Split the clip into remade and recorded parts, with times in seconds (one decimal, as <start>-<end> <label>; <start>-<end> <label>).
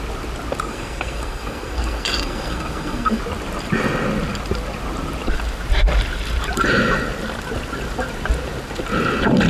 0.0-0.7 recorded; 0.7-3.2 remade; 3.2-9.5 recorded